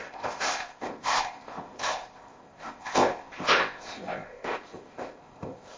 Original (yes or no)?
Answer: no